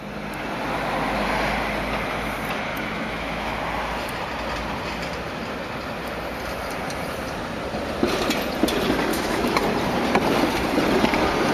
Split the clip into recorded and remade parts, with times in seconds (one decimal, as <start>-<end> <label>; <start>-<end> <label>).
0.0-2.7 recorded; 2.7-3.6 remade; 3.6-9.1 recorded; 9.1-9.6 remade; 9.6-11.5 recorded